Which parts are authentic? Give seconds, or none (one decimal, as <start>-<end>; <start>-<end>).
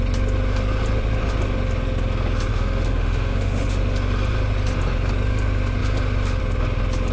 0.0-2.5; 3.8-7.1